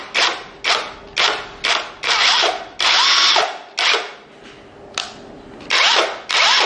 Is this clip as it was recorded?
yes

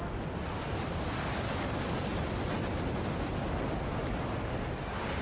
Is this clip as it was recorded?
yes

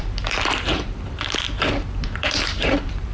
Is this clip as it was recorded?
no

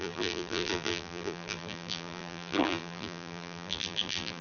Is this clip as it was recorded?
no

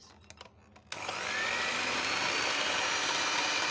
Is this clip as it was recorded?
yes